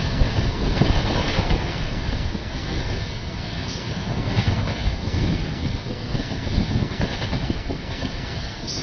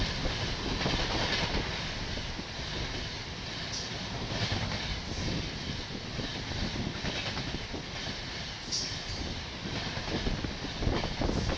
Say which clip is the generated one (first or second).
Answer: first